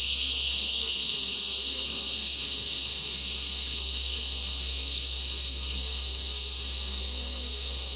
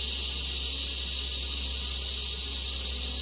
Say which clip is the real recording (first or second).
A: second